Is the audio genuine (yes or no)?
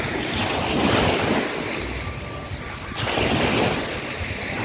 yes